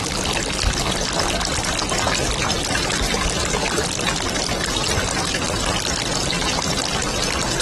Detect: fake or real real